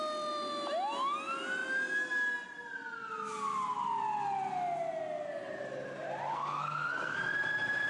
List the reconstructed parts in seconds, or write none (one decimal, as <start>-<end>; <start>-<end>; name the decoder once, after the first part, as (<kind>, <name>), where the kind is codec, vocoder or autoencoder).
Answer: 6.3-7.2 (codec, SNAC)